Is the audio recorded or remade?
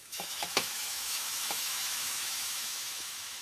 remade